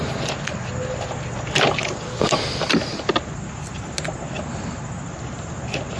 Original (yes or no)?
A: yes